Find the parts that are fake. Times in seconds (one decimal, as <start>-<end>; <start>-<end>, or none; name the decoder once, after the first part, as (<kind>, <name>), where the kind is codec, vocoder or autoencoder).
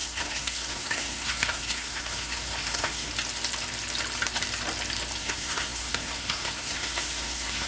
0.0-3.1 (codec, SNAC); 5.2-7.7